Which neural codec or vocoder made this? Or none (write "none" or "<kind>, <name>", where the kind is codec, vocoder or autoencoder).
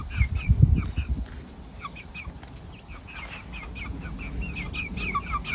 none